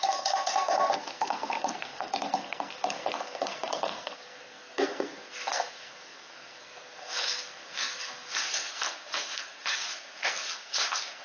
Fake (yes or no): yes